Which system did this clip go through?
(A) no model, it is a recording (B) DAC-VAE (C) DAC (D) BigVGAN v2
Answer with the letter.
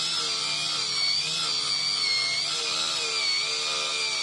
A